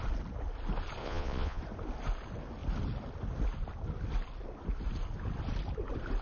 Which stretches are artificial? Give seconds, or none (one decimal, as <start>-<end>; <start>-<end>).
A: 1.0-1.6